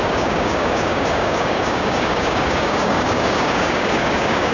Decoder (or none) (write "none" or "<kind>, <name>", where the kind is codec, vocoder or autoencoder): codec, DAC